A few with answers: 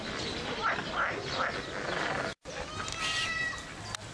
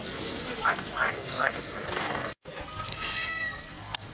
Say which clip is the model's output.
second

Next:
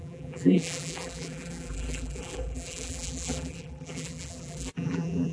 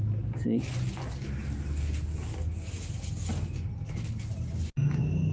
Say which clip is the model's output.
first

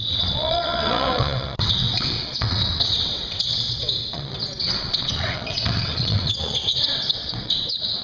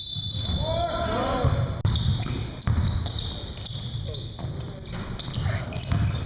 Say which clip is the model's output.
first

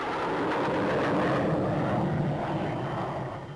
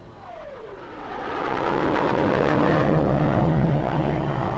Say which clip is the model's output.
second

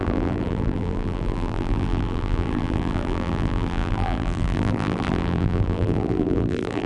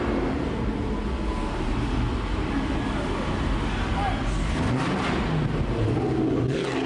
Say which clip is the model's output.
first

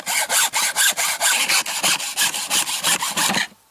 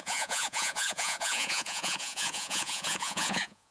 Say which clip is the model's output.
second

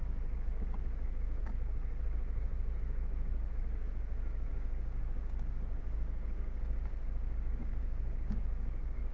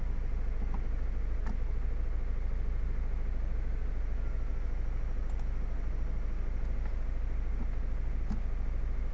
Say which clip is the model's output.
first